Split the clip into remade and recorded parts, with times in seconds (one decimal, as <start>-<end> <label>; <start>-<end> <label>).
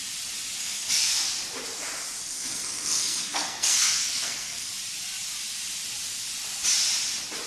0.0-0.6 recorded; 0.6-1.3 remade; 1.3-2.2 recorded; 2.2-4.7 remade; 4.7-7.5 recorded